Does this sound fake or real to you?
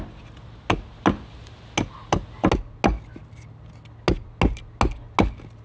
real